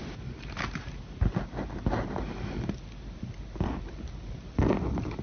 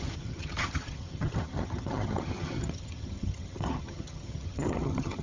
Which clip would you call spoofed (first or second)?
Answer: second